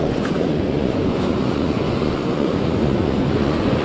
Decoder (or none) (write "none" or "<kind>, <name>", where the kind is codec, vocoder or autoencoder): vocoder, Vocos